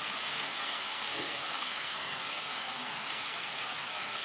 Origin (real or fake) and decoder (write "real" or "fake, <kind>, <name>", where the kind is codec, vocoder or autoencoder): fake, codec, SNAC